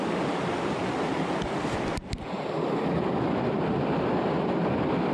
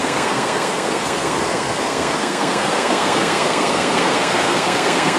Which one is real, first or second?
first